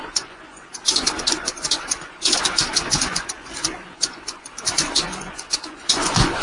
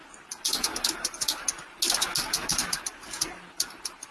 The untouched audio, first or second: second